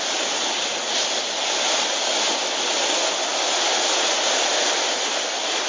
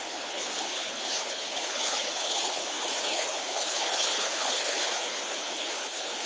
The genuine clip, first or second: first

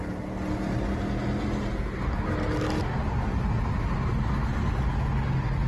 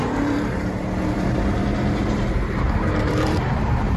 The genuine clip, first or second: first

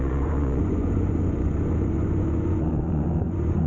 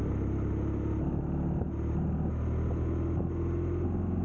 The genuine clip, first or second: second